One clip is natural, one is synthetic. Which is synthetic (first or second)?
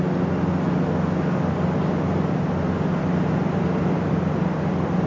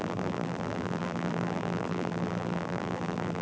second